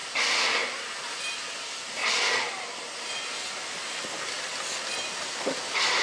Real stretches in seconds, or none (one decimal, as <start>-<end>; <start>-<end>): 0.0-6.0